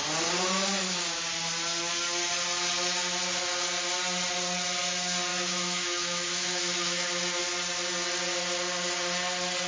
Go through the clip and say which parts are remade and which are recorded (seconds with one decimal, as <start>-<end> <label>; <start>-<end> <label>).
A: 0.0-5.3 recorded; 5.3-7.4 remade; 7.4-9.7 recorded